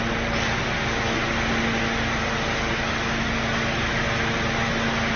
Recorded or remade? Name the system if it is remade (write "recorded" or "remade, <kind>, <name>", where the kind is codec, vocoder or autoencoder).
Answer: recorded